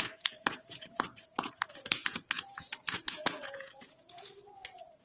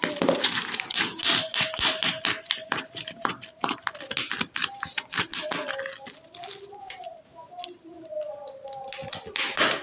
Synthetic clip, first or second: first